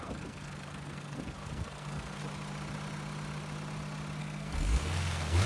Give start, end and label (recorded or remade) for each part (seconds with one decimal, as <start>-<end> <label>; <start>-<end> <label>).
0.0-2.2 remade; 2.2-4.2 recorded; 4.2-5.5 remade